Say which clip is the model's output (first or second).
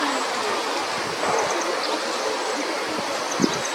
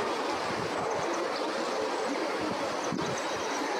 second